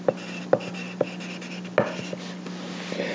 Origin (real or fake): real